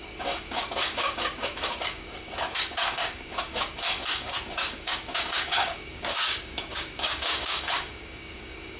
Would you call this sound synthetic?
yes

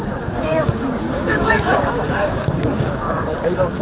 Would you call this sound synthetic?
yes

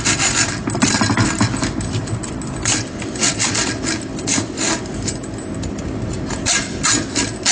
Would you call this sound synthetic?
no